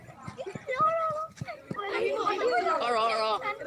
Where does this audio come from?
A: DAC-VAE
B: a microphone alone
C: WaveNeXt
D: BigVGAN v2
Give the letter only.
B